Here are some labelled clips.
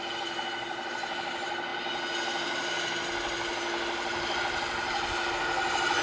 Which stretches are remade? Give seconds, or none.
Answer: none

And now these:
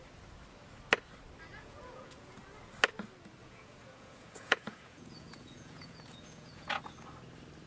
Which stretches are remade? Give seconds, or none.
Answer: 1.5-2.4 (vocoder, Vocos); 3.4-6.8

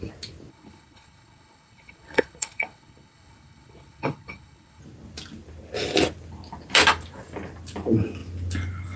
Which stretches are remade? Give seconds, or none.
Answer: 0.5-4.8 (codec, HILCodec)

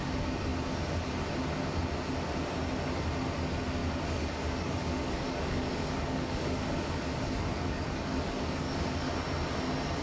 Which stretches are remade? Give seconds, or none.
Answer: 3.8-9.1 (codec, DAC)

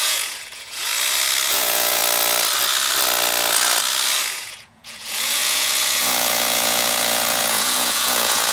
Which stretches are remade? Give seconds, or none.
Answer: 0.0-0.9 (vocoder, Vocos); 1.5-2.0; 4.3-8.5

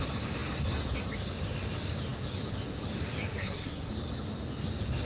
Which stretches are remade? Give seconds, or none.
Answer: 3.4-3.9 (codec, SNAC)

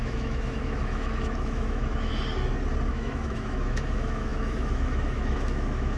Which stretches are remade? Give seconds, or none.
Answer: 0.0-2.1 (autoencoder, DAC-VAE); 2.9-6.0

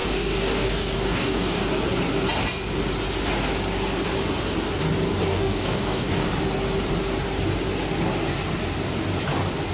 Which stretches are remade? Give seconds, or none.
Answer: 0.0-1.7 (codec, DAC); 5.3-6.3